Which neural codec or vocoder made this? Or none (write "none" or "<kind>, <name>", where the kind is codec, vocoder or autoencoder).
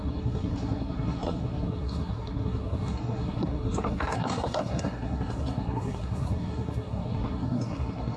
codec, SNAC